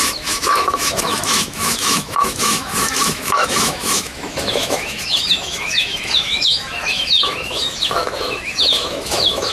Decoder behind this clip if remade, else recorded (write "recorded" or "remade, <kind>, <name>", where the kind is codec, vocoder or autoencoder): remade, autoencoder, DAC-VAE